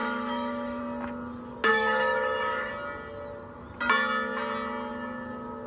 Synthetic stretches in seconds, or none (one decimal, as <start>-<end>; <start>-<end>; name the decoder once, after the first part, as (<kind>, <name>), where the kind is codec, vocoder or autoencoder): 0.0-0.8 (autoencoder, DAC-VAE); 1.7-2.7